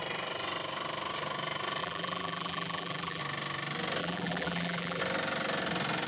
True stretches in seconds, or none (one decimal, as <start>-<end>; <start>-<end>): 0.0-1.8; 3.2-4.0; 5.0-6.1